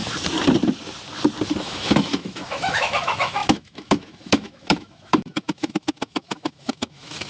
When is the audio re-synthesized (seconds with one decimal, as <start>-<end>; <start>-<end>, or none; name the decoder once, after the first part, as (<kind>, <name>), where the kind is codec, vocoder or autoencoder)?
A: 1.6-7.3 (autoencoder, DAC-VAE)